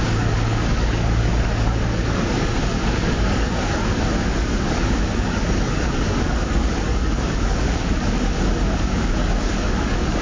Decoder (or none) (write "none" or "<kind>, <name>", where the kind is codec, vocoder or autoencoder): codec, DAC